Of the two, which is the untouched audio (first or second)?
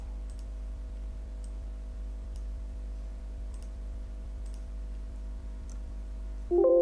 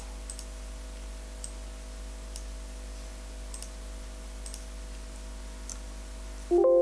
second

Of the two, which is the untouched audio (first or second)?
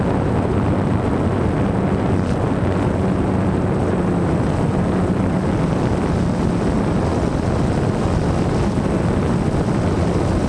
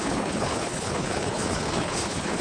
first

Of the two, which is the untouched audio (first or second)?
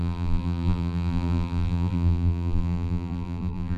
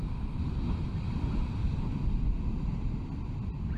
second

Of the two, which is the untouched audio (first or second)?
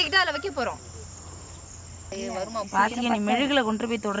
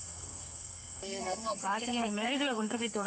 first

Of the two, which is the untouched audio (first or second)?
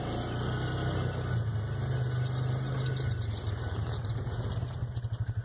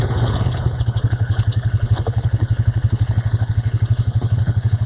first